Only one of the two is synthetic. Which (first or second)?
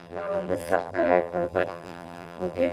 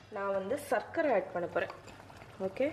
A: first